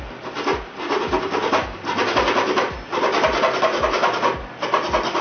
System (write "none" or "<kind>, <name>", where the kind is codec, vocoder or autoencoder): none